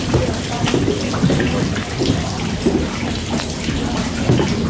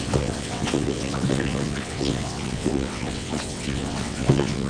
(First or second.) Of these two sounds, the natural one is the first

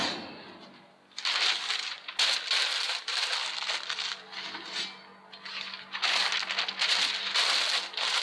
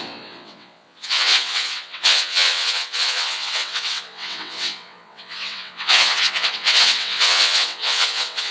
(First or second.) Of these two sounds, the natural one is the first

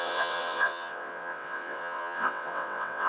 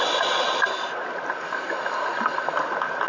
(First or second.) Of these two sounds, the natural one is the second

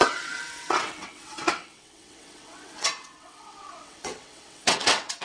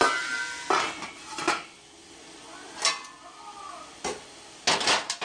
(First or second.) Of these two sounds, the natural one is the second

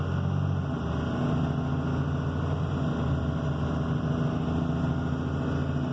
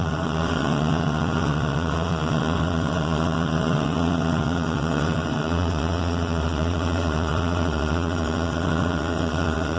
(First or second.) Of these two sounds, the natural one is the first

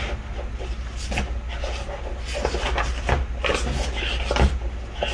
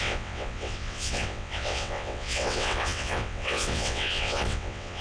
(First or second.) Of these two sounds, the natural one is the first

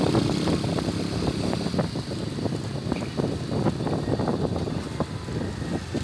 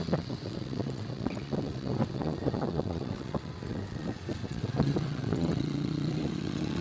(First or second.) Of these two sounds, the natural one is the first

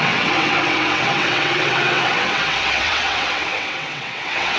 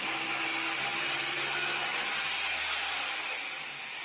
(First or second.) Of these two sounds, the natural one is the second